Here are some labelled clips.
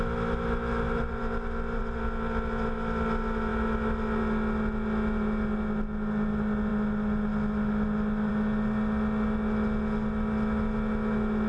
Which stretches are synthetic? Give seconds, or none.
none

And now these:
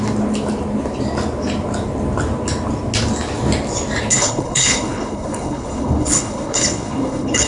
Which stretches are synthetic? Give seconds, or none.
4.1-7.5

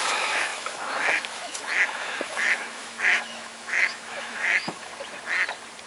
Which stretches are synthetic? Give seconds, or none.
0.0-4.9

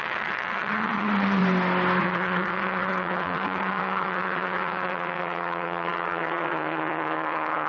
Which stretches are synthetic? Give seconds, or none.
0.0-1.4; 2.0-7.7

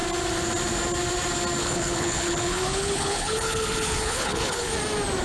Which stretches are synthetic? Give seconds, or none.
1.6-4.7